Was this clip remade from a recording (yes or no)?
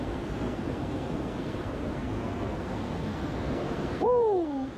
yes